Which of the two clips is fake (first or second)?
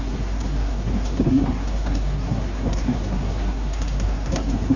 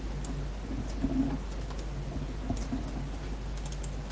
first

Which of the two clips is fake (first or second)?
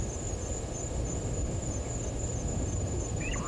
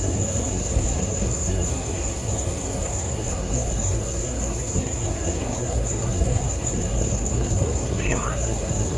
second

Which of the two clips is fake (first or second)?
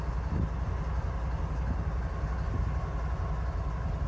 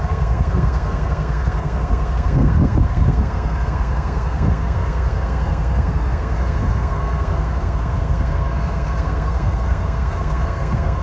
second